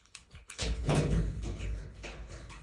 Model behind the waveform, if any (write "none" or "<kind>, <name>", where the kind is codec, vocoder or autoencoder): codec, HILCodec